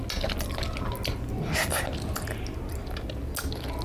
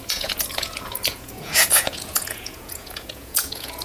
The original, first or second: first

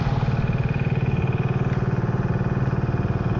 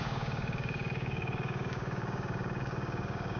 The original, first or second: first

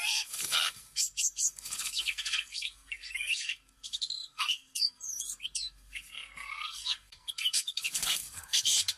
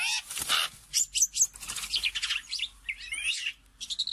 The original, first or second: second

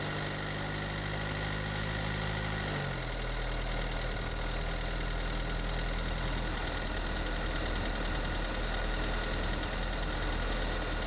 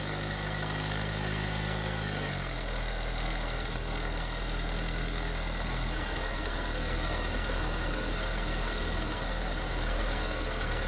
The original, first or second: first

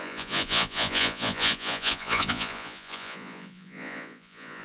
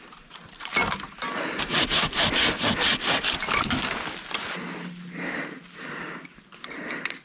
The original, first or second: second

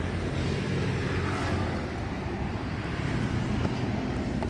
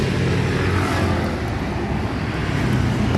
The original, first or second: second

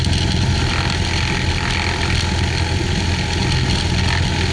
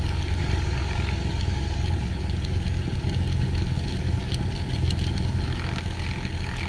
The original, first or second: first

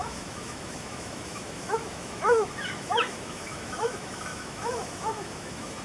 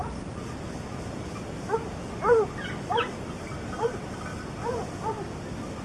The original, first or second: second